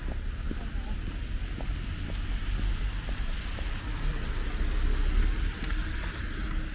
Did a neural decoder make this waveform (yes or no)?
no